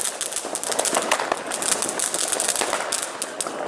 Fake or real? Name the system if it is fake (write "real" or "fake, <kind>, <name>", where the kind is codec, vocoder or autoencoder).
real